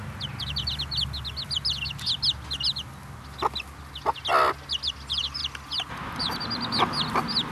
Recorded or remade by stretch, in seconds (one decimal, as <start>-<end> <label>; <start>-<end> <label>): 0.0-7.5 recorded

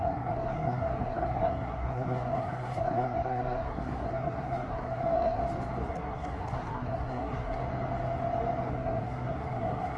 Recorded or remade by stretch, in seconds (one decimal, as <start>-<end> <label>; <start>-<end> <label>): 0.0-5.4 remade; 5.4-5.9 recorded; 5.9-7.6 remade; 7.6-8.7 recorded; 8.7-10.0 remade

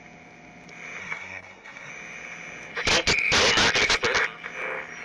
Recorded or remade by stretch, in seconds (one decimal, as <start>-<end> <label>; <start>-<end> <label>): 0.0-1.0 recorded; 1.0-1.9 remade; 1.9-5.0 recorded

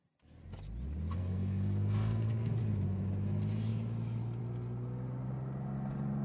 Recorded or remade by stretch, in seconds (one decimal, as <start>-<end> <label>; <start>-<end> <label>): 0.0-1.2 recorded; 1.2-2.6 remade; 2.6-6.2 recorded

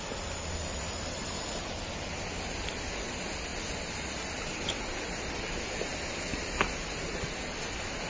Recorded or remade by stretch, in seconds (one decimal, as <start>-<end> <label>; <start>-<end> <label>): 0.0-8.1 recorded